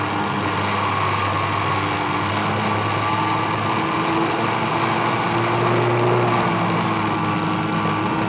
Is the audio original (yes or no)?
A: yes